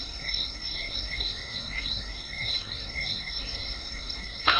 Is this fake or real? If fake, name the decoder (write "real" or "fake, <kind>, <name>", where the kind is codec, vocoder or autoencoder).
fake, codec, SNAC